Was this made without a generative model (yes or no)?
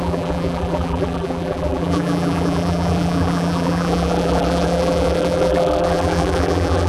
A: no